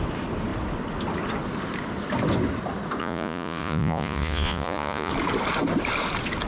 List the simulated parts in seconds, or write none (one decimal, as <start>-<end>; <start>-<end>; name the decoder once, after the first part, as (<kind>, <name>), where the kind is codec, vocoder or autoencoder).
3.0-5.1 (vocoder, Vocos)